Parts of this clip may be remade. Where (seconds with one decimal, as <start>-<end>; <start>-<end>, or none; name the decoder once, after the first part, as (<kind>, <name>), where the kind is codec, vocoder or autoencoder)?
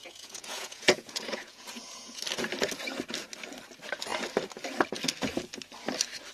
0.0-2.2 (vocoder, Vocos)